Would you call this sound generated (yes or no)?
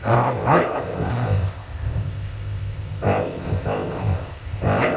yes